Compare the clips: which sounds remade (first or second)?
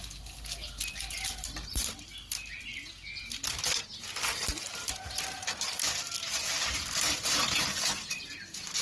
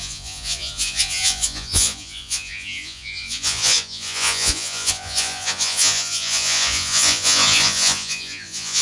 second